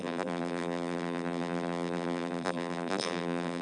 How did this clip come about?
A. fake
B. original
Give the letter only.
A